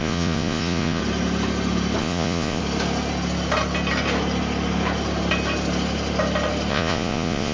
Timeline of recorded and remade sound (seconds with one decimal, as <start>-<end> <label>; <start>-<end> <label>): 0.0-1.0 remade; 1.0-2.0 recorded; 2.0-2.6 remade; 2.6-6.7 recorded; 6.7-7.5 remade